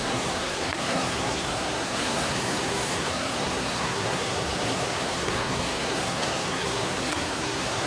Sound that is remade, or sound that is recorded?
remade